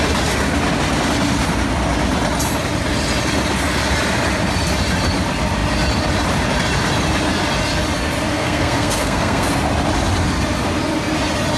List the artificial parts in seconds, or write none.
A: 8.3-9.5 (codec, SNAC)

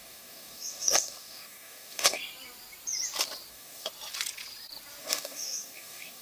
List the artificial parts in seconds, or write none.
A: 0.0-2.2 (codec, DAC); 3.5-3.9; 5.0-6.2

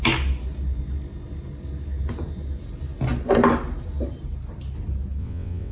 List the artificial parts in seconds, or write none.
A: 5.2-5.7 (vocoder, WaveNeXt)

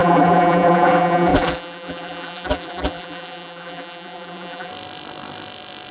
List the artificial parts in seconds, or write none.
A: 0.0-4.7 (vocoder, BigVGAN v2)

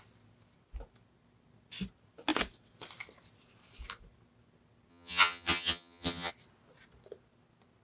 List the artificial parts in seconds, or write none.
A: 4.9-6.3 (vocoder, HiFi-GAN)

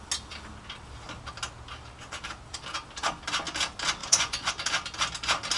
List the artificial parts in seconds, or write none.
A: 4.0-4.5 (vocoder, Vocos)